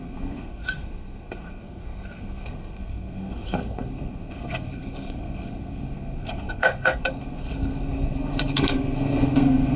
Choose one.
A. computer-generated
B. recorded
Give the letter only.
A